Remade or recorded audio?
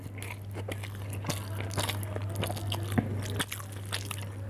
recorded